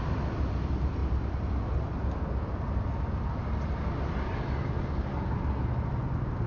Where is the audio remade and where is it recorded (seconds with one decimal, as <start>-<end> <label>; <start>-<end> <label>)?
0.0-6.5 recorded